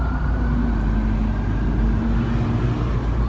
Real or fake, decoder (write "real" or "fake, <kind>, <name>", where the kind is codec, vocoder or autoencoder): real